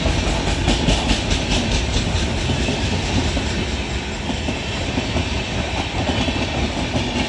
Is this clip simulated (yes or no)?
no